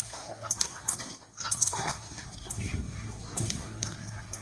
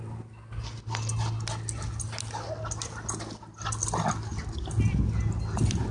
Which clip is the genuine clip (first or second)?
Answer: second